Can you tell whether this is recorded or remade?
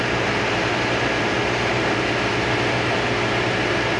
recorded